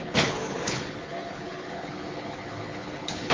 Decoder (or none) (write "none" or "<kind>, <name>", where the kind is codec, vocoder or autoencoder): codec, HILCodec